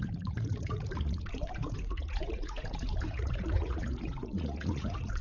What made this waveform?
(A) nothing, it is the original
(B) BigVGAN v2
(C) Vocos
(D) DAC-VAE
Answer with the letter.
C